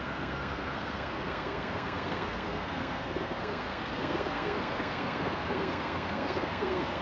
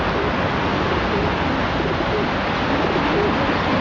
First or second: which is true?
second